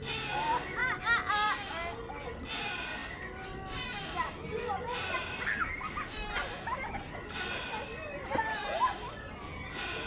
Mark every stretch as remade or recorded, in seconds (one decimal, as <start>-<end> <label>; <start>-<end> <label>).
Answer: 0.0-10.1 recorded